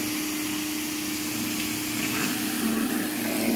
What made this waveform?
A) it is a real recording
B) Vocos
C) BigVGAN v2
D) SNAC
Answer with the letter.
A